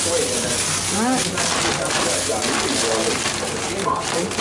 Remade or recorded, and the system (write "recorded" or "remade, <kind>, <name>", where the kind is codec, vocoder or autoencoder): recorded